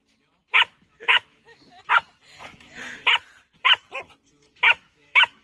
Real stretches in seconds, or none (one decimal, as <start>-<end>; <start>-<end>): 0.0-0.7; 1.8-4.5